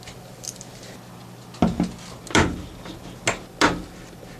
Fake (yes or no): no